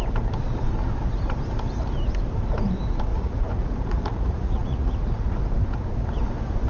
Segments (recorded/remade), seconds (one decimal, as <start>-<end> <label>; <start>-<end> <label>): 0.0-3.1 recorded; 3.1-5.4 remade; 5.4-6.7 recorded